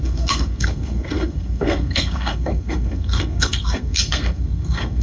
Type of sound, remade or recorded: remade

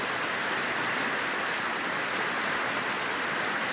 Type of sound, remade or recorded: recorded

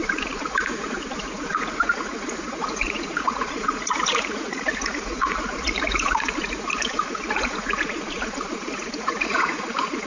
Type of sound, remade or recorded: remade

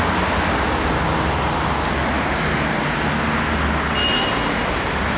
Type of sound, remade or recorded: recorded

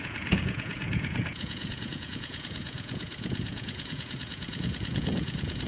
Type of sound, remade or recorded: remade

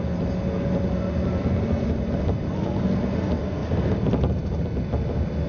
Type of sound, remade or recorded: recorded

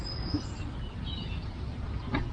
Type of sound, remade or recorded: recorded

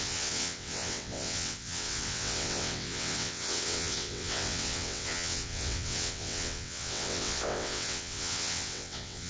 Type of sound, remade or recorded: remade